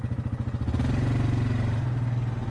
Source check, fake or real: real